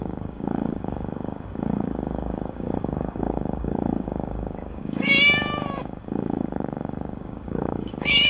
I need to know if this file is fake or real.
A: fake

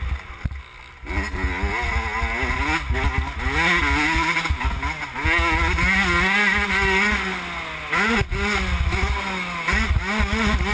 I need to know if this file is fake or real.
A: real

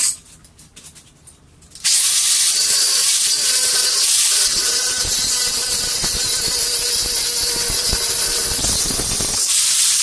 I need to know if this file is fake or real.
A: real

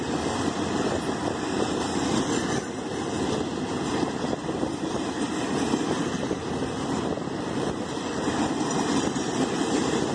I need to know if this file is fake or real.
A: fake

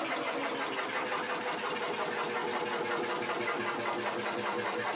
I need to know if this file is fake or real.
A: real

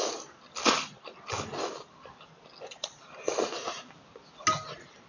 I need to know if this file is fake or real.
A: real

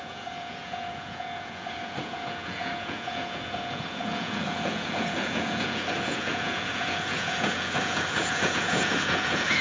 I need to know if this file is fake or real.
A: fake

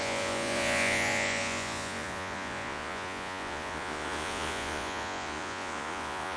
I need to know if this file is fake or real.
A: fake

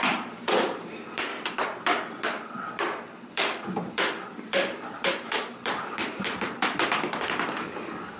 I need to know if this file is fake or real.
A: fake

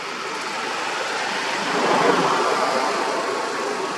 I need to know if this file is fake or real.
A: real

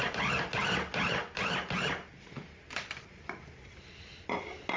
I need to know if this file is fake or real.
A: real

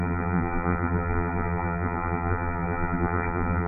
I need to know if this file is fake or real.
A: fake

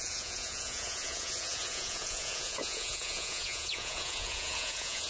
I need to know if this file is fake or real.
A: fake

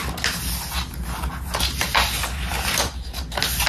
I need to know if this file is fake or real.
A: real